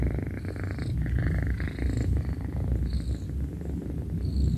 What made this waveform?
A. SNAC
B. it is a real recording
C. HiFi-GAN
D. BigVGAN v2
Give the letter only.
B